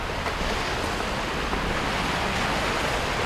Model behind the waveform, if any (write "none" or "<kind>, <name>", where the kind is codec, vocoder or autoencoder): none